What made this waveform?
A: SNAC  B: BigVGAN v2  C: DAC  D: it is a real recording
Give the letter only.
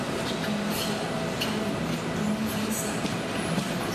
D